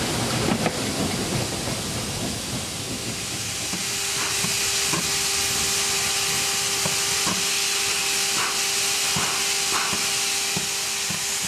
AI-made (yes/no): no